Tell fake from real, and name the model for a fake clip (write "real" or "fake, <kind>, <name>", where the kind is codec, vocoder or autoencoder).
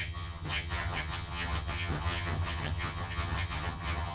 fake, vocoder, HiFi-GAN